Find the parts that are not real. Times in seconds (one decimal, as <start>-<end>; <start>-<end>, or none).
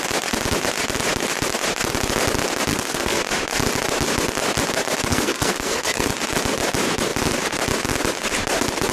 2.7-3.2; 5.1-6.1